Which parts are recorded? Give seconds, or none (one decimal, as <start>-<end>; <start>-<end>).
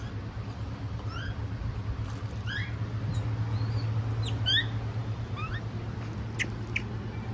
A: 0.0-5.0; 5.5-7.3